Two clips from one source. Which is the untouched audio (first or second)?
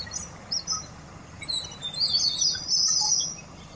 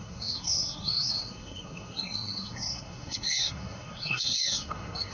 first